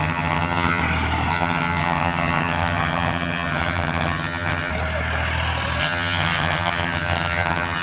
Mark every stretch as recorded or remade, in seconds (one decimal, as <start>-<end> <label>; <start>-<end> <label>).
0.0-0.8 remade; 0.8-1.3 recorded; 1.3-4.7 remade; 4.7-5.8 recorded; 5.8-7.8 remade